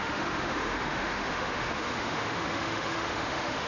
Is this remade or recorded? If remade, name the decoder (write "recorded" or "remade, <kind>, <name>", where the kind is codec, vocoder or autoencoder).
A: remade, autoencoder, DAC-VAE